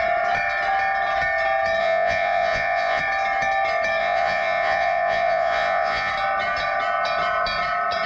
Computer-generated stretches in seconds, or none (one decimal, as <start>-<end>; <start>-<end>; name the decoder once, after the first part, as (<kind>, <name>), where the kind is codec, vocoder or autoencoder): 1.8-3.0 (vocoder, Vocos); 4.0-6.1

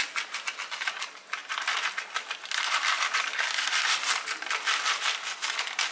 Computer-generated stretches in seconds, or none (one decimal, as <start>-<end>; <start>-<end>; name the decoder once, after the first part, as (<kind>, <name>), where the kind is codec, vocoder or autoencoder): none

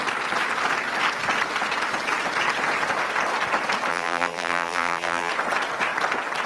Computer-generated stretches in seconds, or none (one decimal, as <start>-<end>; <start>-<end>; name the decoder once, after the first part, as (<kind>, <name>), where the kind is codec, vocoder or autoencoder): 3.9-5.3 (vocoder, BigVGAN v2)

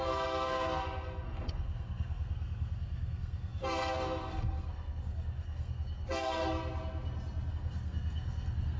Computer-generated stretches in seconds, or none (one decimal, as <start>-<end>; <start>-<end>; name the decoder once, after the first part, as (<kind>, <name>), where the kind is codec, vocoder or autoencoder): 0.0-6.4 (codec, SNAC); 7.5-8.8

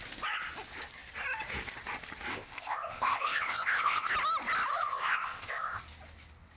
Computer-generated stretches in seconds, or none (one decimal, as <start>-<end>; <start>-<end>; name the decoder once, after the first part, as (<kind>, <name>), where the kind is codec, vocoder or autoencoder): 2.3-4.1 (codec, ZipCodec); 4.7-5.8